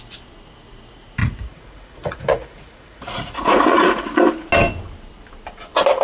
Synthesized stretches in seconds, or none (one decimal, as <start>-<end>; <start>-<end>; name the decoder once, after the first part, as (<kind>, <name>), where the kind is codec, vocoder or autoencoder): 1.2-4.1 (vocoder, Vocos)